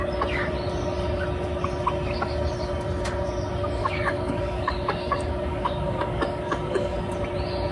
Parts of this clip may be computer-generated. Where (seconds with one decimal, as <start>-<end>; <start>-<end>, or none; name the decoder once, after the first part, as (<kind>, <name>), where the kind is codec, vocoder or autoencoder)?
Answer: 3.8-7.0 (codec, DAC)